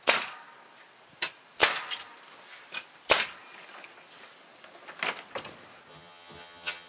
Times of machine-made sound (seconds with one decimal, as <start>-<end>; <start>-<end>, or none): 5.9-6.9